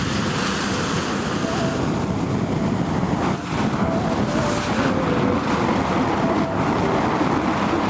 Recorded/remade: recorded